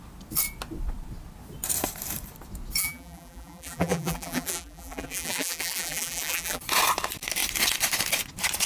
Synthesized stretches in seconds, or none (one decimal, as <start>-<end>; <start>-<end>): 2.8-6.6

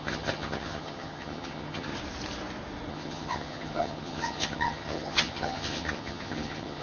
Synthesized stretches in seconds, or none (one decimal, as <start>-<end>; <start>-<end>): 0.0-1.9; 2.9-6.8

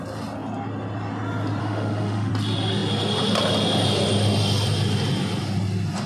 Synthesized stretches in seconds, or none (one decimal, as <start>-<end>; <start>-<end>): 1.6-2.3

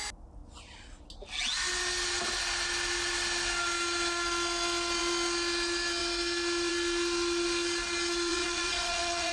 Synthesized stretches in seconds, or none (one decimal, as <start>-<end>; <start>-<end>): 8.3-9.3